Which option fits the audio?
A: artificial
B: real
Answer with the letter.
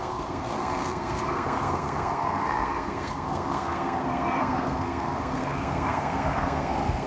A